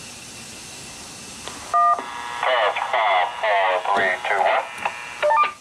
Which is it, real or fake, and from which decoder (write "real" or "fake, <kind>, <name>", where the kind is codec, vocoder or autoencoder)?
real